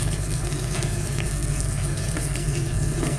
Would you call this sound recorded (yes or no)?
no